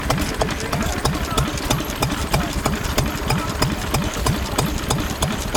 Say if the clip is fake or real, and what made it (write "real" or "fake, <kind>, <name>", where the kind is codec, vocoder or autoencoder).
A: real